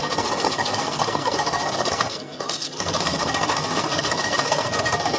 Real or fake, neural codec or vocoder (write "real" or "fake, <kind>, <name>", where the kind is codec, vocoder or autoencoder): fake, codec, SNAC